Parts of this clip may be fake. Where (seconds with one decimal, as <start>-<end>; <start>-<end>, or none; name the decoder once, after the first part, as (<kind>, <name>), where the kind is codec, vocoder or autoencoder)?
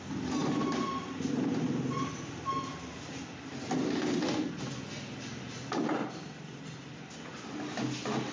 none